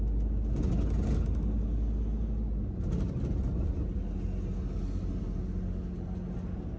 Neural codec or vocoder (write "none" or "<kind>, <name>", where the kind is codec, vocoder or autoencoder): none